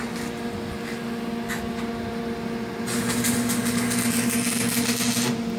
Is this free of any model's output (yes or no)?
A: yes